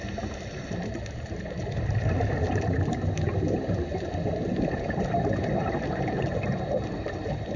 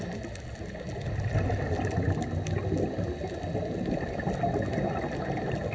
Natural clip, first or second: second